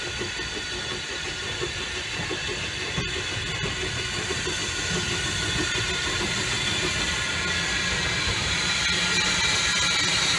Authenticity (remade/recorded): recorded